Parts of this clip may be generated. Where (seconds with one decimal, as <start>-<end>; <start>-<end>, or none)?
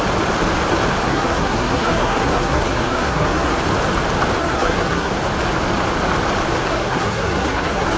1.0-3.6; 4.4-5.1; 6.7-8.0